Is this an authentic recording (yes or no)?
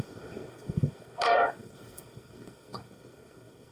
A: no